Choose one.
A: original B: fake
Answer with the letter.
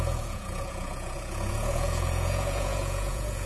B